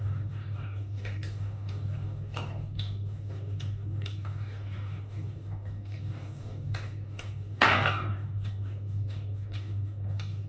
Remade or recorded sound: remade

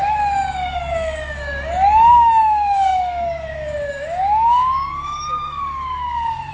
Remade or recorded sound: remade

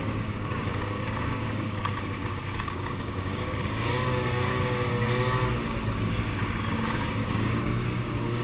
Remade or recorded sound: remade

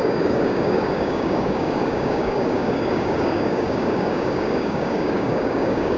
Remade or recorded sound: remade